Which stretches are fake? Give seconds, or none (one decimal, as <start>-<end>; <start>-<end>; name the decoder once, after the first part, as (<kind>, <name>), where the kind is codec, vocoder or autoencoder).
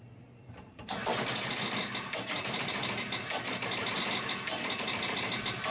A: 0.0-1.1 (vocoder, BigVGAN v2); 3.9-5.7